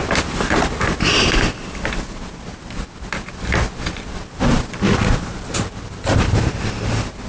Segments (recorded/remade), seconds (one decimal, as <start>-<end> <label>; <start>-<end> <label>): 0.0-7.3 recorded

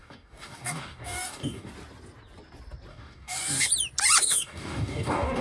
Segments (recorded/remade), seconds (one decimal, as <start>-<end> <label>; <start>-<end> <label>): 0.0-1.7 remade; 1.7-2.9 recorded; 2.9-3.7 remade; 3.7-4.2 recorded; 4.2-5.4 remade

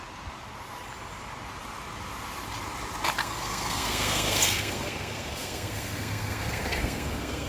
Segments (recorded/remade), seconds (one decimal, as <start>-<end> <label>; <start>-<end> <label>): 0.0-3.2 recorded; 3.2-7.5 remade

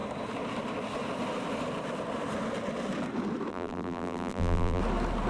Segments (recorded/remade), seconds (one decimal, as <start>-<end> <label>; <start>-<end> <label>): 0.0-3.5 recorded; 3.5-4.8 remade; 4.8-5.3 recorded

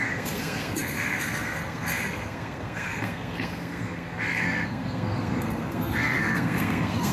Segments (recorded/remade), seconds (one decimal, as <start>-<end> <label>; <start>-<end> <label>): 0.0-7.1 remade

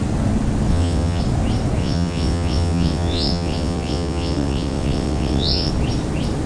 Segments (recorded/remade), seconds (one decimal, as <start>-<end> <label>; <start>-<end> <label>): 0.0-0.7 recorded; 0.7-1.2 remade; 1.2-1.8 recorded; 1.8-5.7 remade; 5.7-6.5 recorded